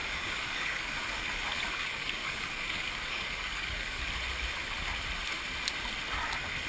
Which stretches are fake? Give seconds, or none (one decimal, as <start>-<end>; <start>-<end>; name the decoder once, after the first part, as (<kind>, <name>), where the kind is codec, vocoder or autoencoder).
0.0-4.0 (codec, DAC)